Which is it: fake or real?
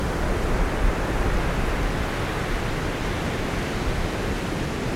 real